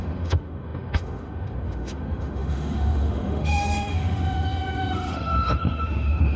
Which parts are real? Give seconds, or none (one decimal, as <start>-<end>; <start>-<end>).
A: none